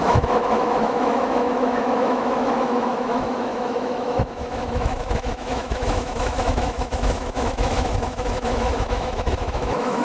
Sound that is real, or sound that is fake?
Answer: fake